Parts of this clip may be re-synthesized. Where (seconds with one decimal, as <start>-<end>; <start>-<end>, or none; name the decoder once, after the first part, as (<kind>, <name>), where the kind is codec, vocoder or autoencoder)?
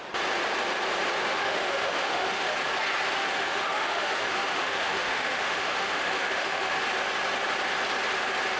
1.3-2.5 (autoencoder, DAC-VAE); 3.2-6.8